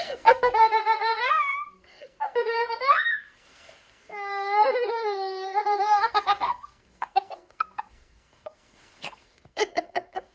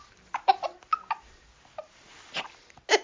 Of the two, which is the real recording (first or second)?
second